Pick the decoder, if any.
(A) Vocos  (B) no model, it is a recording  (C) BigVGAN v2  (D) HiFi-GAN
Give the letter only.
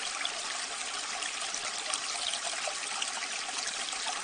B